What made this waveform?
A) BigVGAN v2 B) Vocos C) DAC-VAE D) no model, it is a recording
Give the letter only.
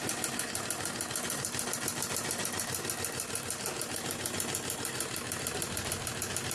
D